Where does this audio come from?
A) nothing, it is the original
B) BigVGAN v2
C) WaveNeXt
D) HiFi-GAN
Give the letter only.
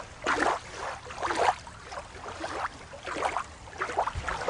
A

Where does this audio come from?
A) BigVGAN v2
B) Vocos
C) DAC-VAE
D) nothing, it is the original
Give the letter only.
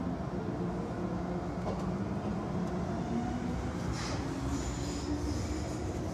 D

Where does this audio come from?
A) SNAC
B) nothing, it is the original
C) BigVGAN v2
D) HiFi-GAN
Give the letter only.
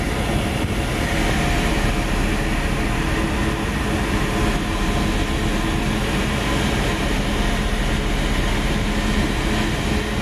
B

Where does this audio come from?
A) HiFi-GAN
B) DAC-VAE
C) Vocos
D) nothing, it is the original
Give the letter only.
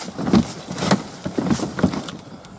D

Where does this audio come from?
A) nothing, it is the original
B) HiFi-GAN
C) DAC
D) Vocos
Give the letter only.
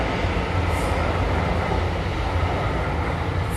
A